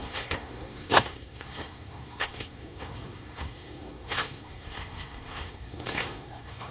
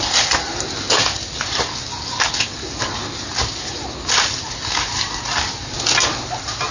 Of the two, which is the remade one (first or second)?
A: first